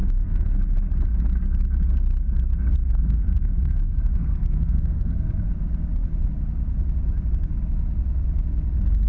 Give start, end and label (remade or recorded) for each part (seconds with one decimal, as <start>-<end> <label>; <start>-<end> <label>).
0.0-0.6 remade; 0.6-2.8 recorded; 2.8-5.5 remade; 5.5-9.1 recorded